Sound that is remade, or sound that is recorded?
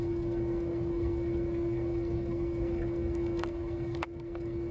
remade